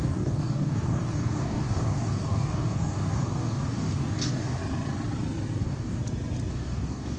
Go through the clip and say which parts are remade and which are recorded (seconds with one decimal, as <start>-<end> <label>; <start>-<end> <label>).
0.0-4.6 remade; 4.6-5.6 recorded; 5.6-6.0 remade; 6.0-6.5 recorded; 6.5-7.2 remade